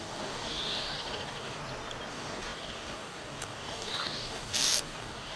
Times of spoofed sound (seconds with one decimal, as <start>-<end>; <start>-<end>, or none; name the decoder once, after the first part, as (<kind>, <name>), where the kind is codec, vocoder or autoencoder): 0.0-1.6 (codec, DAC); 2.1-5.4